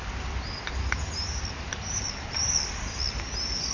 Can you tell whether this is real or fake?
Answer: real